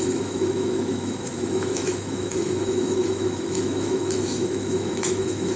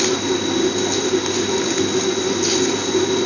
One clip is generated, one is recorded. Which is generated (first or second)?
first